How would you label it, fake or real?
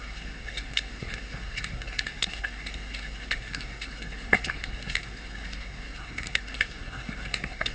fake